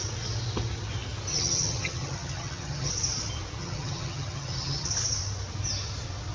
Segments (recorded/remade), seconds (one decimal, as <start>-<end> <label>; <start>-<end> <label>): 0.0-1.3 recorded; 1.3-2.9 remade; 2.9-3.6 recorded; 3.6-4.9 remade; 4.9-6.3 recorded